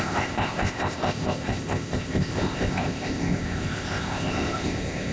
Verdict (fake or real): fake